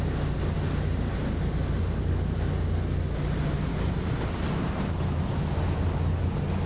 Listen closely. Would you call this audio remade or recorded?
recorded